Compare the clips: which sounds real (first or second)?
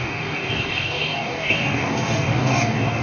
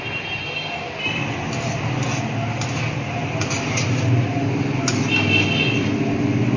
second